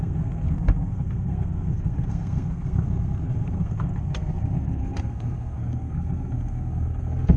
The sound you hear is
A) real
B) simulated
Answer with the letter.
B